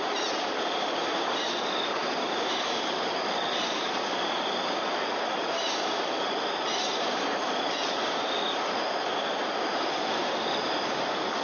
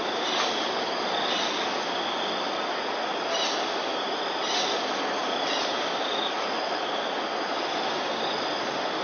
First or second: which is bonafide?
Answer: second